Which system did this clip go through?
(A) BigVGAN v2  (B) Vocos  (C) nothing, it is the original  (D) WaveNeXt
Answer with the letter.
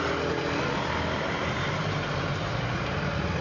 C